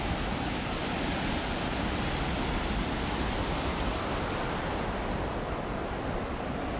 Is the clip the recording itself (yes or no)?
yes